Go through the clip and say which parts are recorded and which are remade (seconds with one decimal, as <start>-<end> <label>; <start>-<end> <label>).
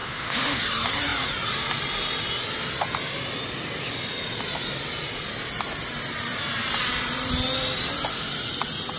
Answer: 0.0-0.6 remade; 0.6-9.0 recorded